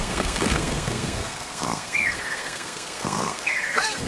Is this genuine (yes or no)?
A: no